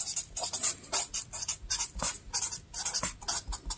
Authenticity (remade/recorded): recorded